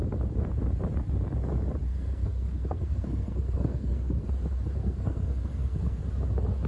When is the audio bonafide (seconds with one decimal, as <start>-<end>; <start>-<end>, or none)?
0.0-1.9; 4.3-4.8; 6.0-6.7